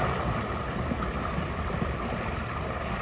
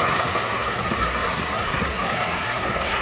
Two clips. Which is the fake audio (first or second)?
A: second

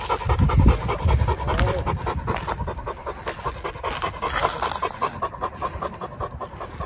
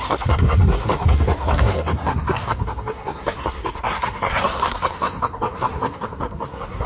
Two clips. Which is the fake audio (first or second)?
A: second